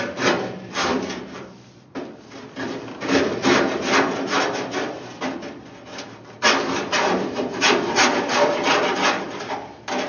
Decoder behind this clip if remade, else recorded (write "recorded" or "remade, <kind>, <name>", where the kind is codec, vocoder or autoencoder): remade, vocoder, BigVGAN v2